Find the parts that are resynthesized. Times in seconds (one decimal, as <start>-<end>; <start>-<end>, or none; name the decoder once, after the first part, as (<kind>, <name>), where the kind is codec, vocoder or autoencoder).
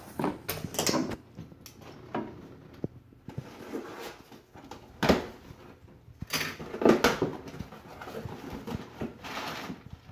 none